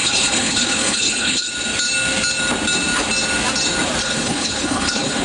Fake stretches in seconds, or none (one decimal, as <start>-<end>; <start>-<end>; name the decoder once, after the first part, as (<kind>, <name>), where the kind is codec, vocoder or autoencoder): 0.0-1.5 (codec, HILCodec); 4.0-5.2